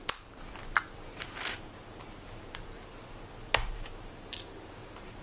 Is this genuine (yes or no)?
yes